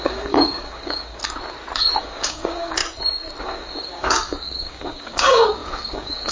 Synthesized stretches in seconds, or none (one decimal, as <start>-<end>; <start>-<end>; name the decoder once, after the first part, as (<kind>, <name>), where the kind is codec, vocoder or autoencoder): 0.0-1.2 (codec, DAC); 2.0-2.8; 3.4-6.3